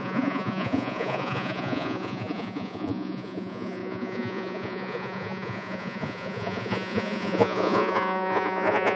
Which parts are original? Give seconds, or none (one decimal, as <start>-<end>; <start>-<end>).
none